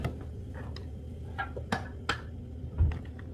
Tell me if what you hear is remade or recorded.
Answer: recorded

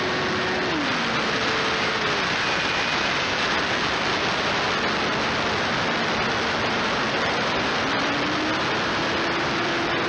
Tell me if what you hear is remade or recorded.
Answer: recorded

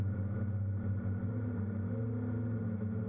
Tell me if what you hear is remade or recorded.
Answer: recorded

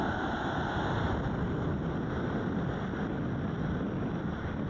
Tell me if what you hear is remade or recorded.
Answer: recorded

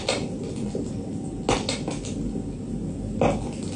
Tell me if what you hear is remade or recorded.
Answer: recorded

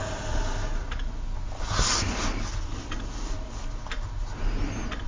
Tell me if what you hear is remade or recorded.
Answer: recorded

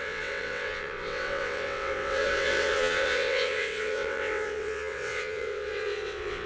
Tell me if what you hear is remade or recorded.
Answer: remade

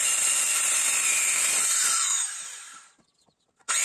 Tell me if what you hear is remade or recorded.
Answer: recorded